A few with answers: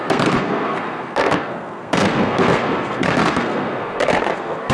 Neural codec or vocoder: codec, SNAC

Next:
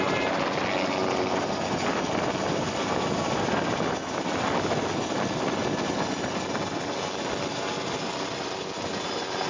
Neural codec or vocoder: none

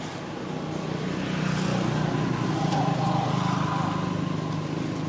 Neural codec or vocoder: none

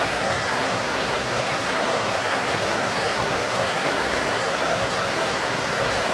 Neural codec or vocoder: codec, SNAC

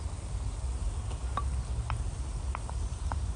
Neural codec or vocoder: none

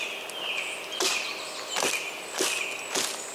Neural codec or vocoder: none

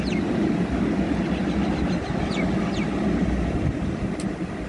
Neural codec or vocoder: none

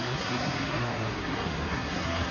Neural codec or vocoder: codec, SNAC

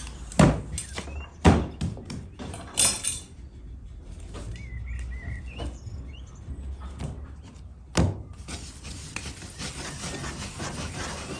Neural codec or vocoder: none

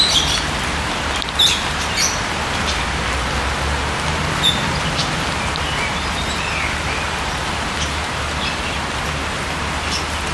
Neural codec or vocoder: none